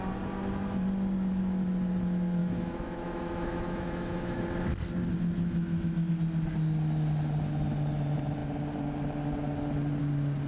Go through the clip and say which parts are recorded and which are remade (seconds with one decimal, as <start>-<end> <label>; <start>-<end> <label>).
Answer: 0.0-2.4 recorded; 2.4-4.4 remade; 4.4-5.6 recorded; 5.6-6.1 remade; 6.1-10.5 recorded